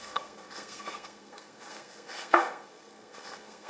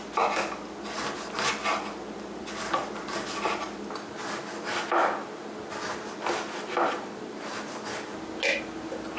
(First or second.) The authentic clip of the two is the second